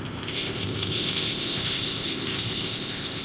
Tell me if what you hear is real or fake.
fake